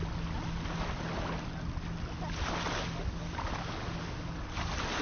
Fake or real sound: real